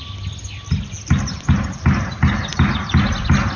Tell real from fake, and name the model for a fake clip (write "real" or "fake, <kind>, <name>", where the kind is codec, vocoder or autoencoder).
real